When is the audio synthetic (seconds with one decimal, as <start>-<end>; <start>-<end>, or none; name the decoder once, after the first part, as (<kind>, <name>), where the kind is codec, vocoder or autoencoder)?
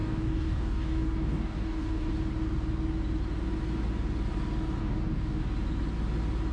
0.0-2.1 (codec, DAC); 4.8-5.4